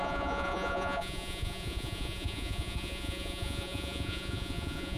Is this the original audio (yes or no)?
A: no